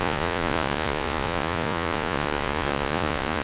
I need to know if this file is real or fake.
fake